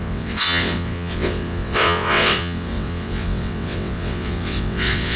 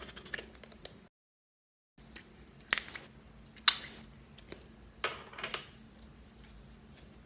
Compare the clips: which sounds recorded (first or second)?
second